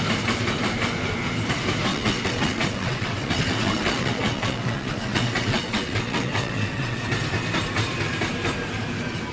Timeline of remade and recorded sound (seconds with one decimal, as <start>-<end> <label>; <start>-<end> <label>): 0.0-1.9 recorded; 1.9-7.0 remade; 7.0-9.3 recorded